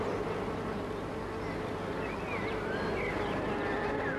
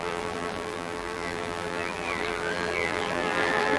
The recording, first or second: first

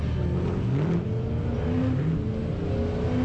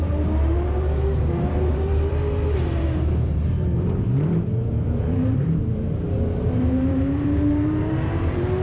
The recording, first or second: first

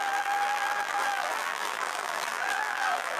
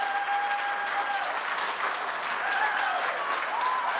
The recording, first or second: second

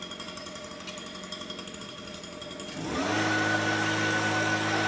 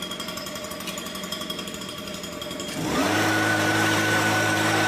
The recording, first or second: first